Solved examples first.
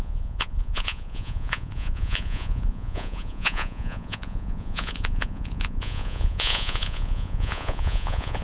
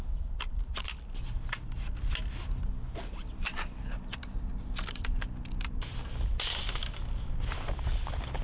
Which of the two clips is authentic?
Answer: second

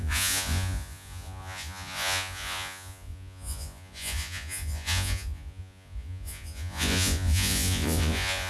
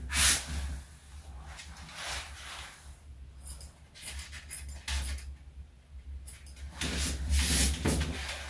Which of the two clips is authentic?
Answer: second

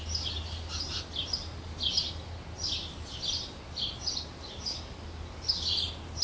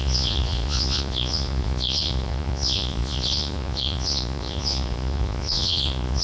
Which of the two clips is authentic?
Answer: first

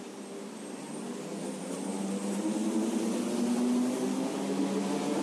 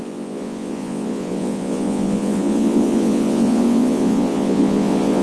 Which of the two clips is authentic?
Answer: first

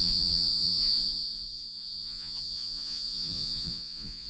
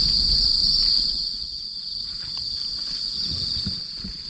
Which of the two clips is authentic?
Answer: second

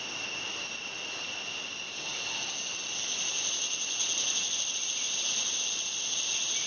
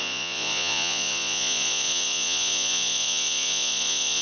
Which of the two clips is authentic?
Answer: first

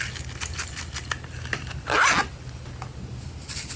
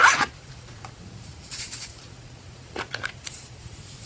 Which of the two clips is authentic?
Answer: first